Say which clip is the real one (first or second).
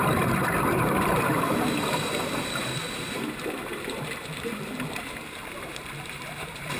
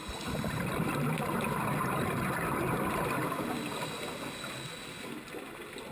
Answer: second